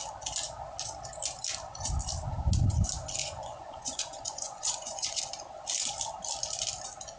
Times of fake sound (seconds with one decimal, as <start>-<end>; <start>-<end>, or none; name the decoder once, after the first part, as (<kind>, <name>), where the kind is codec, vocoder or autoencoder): 3.2-5.2 (vocoder, Vocos)